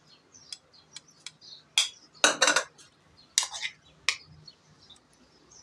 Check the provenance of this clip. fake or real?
real